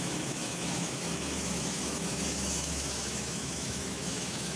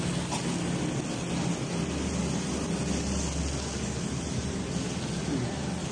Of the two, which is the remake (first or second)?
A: first